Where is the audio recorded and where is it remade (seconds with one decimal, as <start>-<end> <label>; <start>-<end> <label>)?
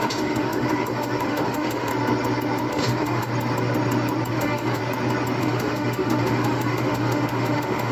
0.0-1.9 remade; 1.9-2.7 recorded; 2.7-3.3 remade; 3.3-4.3 recorded; 4.3-4.8 remade; 4.8-5.4 recorded; 5.4-7.9 remade